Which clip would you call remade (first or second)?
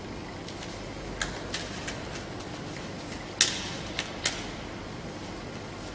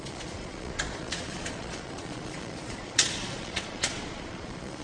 second